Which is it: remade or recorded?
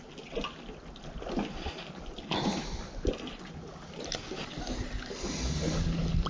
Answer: recorded